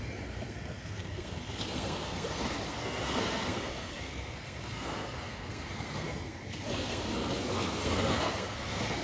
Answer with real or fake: fake